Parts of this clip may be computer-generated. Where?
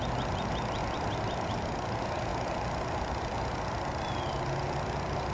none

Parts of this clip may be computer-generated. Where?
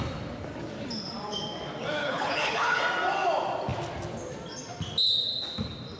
2.0-2.8 (codec, HILCodec)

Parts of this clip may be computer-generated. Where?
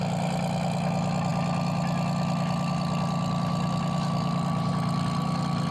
none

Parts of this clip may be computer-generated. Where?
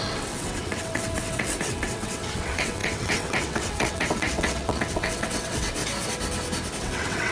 0.0-5.8 (vocoder, WaveNeXt); 6.8-7.3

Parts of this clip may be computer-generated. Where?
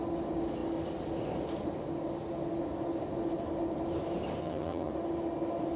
4.4-4.9 (vocoder, HiFi-GAN)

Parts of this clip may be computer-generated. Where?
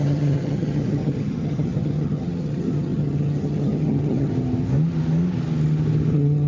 0.0-4.3 (vocoder, HiFi-GAN); 6.1-6.5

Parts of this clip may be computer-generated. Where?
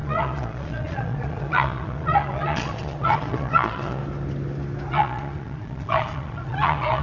0.0-4.0 (vocoder, Vocos); 4.9-7.0